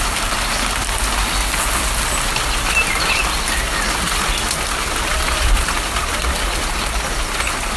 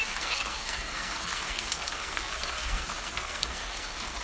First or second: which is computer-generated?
second